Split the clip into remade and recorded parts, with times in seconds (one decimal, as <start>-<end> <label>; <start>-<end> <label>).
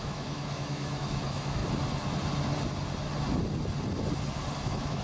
0.0-1.6 remade; 1.6-4.6 recorded; 4.6-5.0 remade